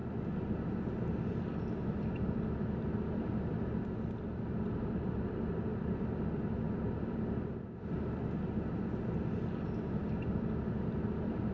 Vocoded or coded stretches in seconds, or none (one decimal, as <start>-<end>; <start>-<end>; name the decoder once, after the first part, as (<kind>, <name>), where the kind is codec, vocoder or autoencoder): none